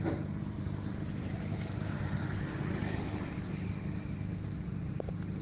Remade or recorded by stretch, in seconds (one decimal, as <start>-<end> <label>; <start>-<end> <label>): 0.0-0.4 recorded; 0.4-2.7 remade; 2.7-5.4 recorded